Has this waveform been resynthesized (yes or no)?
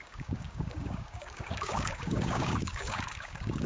yes